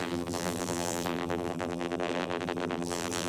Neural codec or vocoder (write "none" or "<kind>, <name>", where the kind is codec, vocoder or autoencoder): vocoder, BigVGAN v2